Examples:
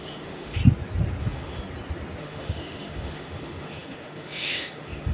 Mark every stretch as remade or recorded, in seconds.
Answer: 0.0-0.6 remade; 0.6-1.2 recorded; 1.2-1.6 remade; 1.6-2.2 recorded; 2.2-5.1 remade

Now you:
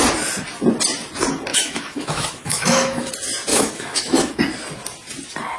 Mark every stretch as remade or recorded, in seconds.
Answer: 0.0-1.5 recorded; 1.5-3.1 remade; 3.1-3.5 recorded; 3.5-4.4 remade; 4.4-5.6 recorded

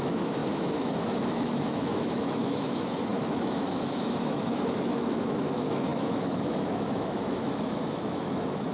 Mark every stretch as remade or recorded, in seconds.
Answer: 0.0-8.7 remade

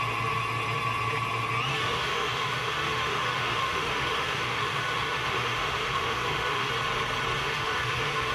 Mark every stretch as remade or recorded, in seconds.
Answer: 0.0-1.7 recorded; 1.7-6.7 remade; 6.7-7.4 recorded; 7.4-8.3 remade

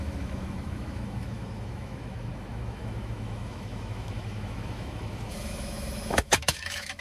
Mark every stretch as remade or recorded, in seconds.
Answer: 0.0-7.0 remade

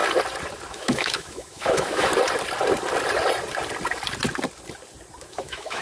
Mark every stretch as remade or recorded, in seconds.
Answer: 0.0-0.7 recorded; 0.7-2.1 remade; 2.1-5.2 recorded; 5.2-5.8 remade

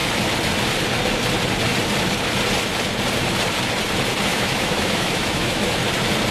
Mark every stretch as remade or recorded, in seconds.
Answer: 0.0-4.3 recorded; 4.3-5.8 remade; 5.8-6.3 recorded